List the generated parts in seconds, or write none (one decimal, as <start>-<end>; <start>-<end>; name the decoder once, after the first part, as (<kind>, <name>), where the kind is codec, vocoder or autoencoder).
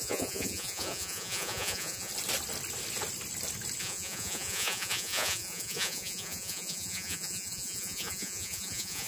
0.0-2.1 (vocoder, Vocos); 3.8-9.1